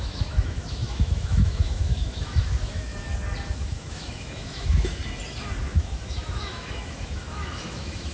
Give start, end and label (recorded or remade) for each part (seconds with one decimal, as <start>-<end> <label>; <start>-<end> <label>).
0.0-2.9 remade; 2.9-3.5 recorded; 3.5-5.0 remade; 5.0-5.6 recorded; 5.6-8.1 remade